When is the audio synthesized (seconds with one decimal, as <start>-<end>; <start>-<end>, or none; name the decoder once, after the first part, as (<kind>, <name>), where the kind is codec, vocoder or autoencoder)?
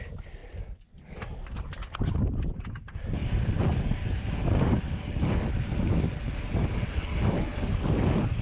3.2-4.3 (vocoder, BigVGAN v2)